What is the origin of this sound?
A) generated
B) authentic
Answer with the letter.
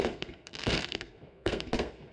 A